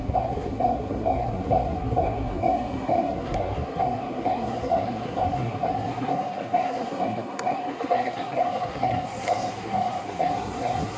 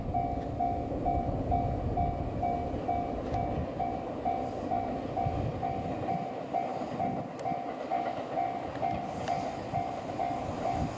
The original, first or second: second